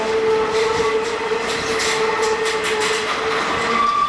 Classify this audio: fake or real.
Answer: real